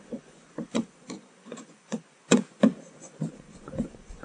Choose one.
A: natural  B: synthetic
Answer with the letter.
B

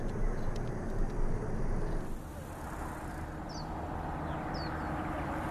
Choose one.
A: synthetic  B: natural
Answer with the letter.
B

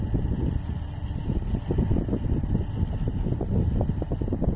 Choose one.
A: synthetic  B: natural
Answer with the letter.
B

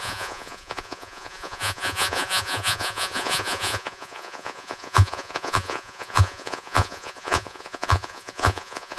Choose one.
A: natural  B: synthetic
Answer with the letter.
B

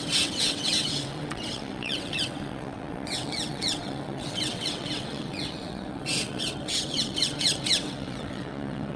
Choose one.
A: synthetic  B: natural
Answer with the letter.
A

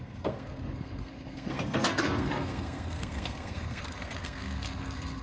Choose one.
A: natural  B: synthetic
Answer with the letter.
B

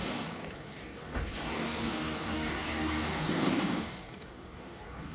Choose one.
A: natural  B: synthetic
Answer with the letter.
B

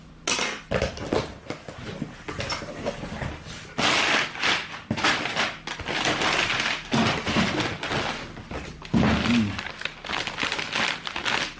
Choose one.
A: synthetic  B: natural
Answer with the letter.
B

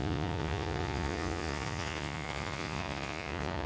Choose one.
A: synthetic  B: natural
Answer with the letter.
A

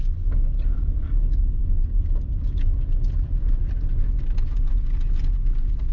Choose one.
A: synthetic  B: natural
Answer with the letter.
B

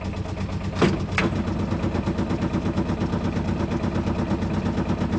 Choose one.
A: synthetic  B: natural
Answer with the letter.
B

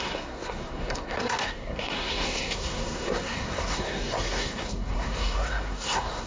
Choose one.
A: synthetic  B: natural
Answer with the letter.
A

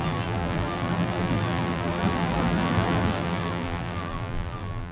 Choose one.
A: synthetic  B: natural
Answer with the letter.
A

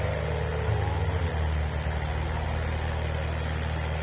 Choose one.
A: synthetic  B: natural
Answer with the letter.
B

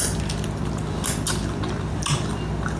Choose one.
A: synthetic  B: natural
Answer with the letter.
B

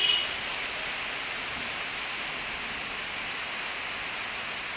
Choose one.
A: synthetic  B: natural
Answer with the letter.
B